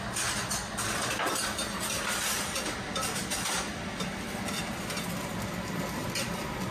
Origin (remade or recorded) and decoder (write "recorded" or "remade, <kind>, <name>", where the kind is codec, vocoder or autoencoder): recorded